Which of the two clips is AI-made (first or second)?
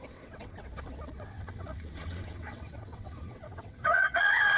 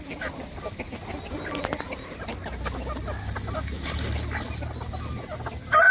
first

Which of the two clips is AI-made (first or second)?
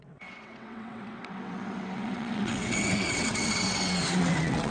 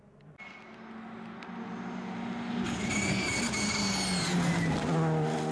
first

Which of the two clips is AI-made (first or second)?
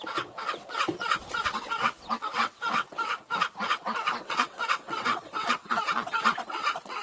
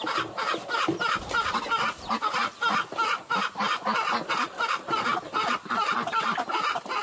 first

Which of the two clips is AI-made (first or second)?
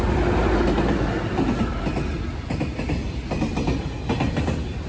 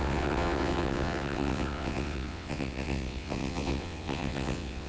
second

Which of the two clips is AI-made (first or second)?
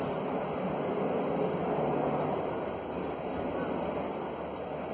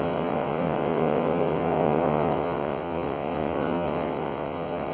second